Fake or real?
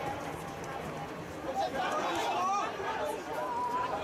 real